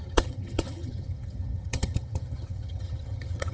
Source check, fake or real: fake